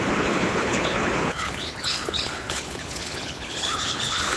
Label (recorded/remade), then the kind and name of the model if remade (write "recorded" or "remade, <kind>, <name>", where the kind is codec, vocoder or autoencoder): remade, codec, HILCodec